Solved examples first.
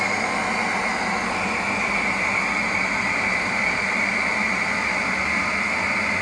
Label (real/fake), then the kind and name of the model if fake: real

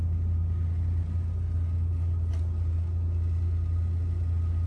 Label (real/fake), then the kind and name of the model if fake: real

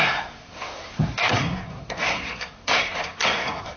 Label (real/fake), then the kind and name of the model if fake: fake, codec, SNAC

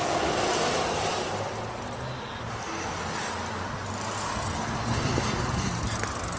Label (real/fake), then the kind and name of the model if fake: real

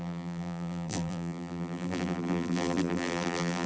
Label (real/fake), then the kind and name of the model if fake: fake, vocoder, BigVGAN v2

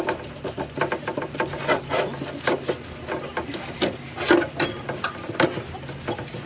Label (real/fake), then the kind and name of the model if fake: real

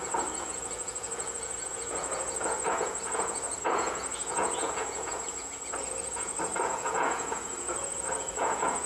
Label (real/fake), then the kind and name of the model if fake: fake, vocoder, Vocos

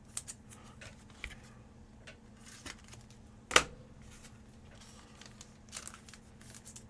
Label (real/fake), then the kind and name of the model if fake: real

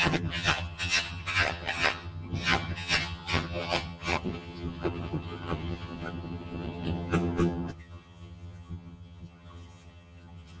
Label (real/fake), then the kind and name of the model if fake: fake, vocoder, HiFi-GAN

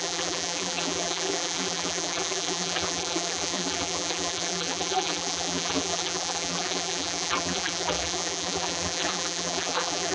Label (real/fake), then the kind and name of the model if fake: fake, vocoder, BigVGAN v2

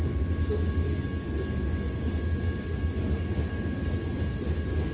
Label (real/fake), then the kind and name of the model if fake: real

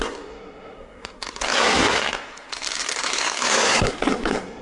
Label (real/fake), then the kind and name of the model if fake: fake, codec, SNAC